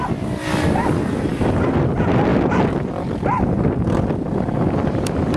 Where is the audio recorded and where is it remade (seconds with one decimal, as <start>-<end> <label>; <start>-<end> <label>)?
0.0-1.3 remade; 1.3-1.8 recorded; 1.8-5.4 remade